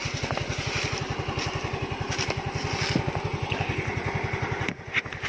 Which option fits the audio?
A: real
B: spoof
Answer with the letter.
A